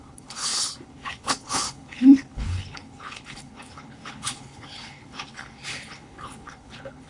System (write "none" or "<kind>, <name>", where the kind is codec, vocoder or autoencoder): codec, HILCodec